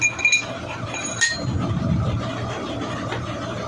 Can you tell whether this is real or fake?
real